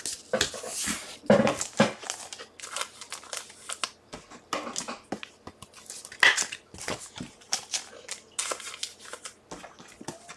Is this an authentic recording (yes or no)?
yes